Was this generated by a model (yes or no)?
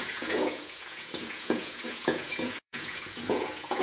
yes